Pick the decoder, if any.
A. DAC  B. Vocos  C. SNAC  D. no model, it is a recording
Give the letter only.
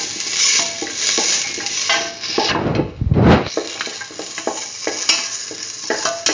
D